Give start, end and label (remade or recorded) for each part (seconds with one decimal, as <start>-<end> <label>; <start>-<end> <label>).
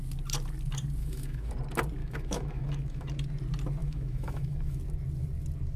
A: 0.0-1.0 recorded; 1.0-1.5 remade; 1.5-2.0 recorded; 2.0-3.1 remade; 3.1-3.8 recorded; 3.8-4.8 remade; 4.8-5.8 recorded